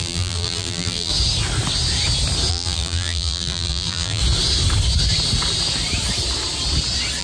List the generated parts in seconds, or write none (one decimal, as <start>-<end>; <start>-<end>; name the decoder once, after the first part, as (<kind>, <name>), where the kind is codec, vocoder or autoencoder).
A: 0.0-1.1 (vocoder, BigVGAN v2); 2.5-4.2

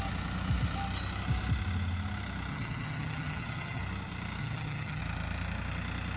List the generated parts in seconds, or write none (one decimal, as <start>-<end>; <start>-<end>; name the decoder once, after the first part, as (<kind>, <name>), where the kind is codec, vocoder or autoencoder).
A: 2.5-3.8 (vocoder, HiFi-GAN); 4.4-5.0

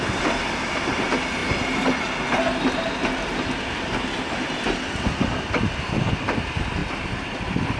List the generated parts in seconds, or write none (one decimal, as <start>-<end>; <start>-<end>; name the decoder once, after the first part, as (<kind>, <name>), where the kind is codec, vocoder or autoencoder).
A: none

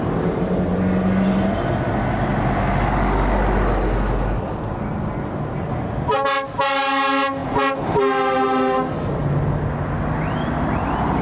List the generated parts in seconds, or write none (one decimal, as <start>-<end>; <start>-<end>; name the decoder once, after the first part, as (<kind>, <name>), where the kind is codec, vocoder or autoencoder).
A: none